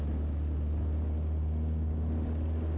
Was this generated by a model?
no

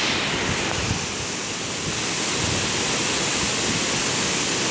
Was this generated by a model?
no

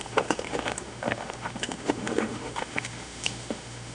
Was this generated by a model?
yes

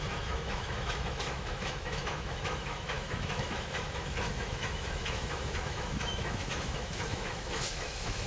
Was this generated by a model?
yes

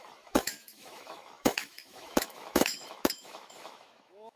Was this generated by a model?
yes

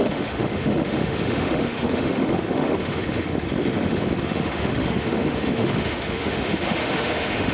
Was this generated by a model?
yes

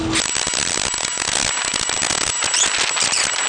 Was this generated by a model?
no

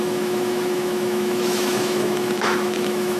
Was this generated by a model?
yes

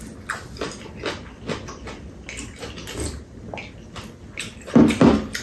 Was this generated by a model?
no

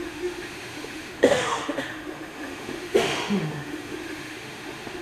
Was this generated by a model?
yes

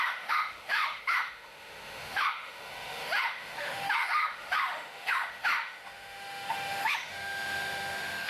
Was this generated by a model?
yes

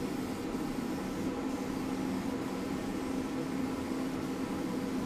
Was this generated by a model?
no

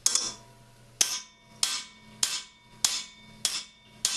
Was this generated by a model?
no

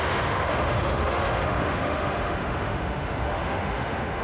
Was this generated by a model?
yes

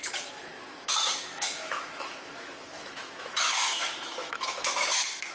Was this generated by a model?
yes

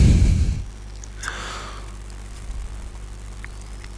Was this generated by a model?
no